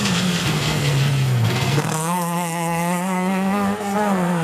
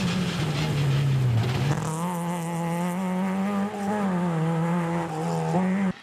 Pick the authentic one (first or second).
second